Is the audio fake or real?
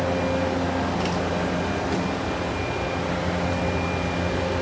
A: real